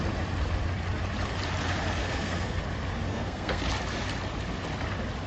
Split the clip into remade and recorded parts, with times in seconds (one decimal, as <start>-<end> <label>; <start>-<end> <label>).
0.0-2.0 recorded; 2.0-2.6 remade; 2.6-3.1 recorded; 3.1-3.6 remade; 3.6-5.3 recorded